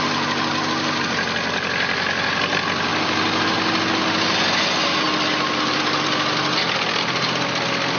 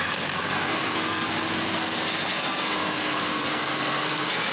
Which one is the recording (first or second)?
first